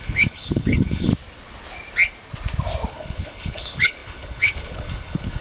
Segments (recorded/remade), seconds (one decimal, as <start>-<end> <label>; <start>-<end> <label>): 0.0-1.1 remade; 1.1-2.9 recorded; 2.9-5.4 remade